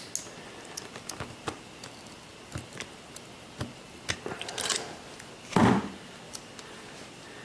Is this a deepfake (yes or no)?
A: no